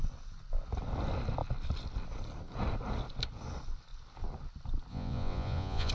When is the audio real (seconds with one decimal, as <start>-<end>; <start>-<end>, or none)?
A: 0.0-4.9